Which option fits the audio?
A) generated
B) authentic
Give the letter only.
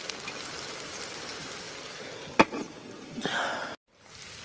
B